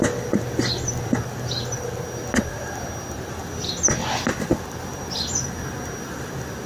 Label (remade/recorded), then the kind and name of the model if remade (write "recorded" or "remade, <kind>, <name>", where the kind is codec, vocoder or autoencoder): recorded